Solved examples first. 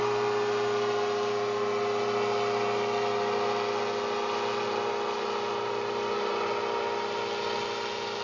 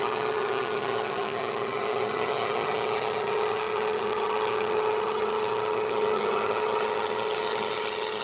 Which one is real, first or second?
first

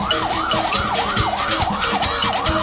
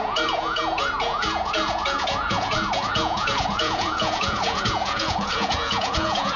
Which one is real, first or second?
first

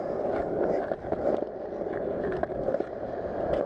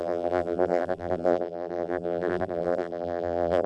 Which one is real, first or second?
first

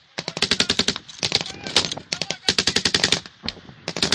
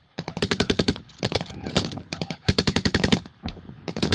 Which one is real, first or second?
first